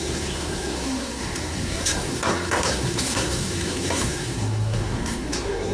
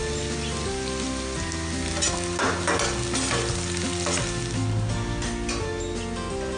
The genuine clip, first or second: second